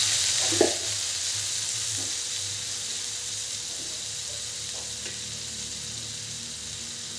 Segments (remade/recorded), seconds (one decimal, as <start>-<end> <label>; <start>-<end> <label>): 0.0-7.2 recorded